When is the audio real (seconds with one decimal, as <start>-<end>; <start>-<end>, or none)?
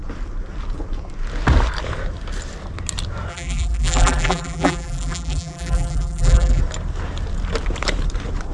0.0-3.3; 6.6-8.5